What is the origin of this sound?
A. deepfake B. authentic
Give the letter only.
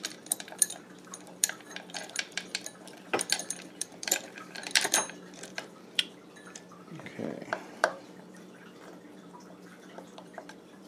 A